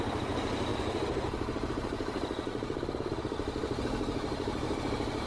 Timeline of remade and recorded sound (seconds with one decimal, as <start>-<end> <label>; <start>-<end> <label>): 0.0-5.3 remade